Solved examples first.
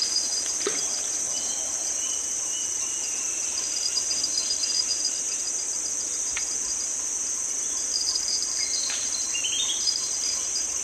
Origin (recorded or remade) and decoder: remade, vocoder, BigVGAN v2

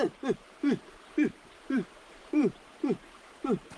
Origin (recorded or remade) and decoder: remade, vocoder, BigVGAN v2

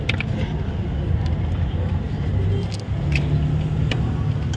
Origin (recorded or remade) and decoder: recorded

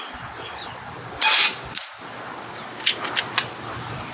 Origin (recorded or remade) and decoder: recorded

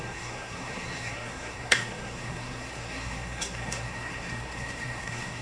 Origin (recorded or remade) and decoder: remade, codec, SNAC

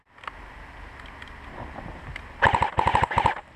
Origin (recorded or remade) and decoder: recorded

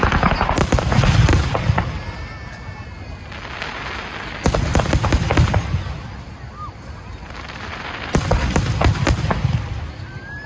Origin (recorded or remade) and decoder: recorded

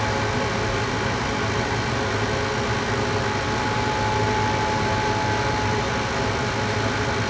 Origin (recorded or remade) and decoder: recorded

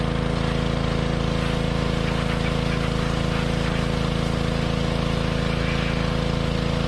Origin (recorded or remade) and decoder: recorded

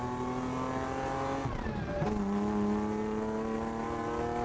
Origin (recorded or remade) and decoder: recorded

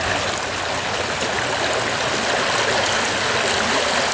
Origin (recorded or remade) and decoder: recorded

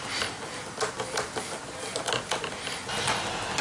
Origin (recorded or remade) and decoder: recorded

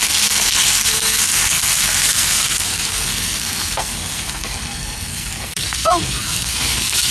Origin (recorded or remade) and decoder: remade, codec, SNAC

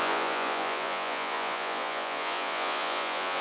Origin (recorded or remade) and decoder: remade, vocoder, Vocos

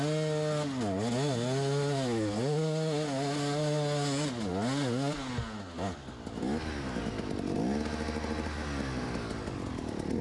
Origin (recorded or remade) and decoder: recorded